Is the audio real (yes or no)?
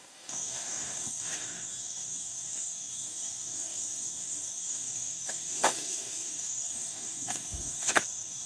no